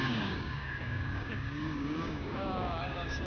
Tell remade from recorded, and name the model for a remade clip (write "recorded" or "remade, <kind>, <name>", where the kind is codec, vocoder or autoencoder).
remade, codec, DAC